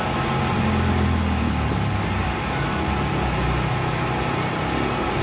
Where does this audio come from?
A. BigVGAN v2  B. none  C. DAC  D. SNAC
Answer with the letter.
B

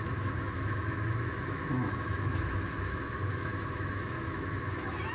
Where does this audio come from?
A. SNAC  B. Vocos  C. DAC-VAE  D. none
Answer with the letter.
C